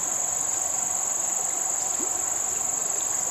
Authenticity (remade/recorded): recorded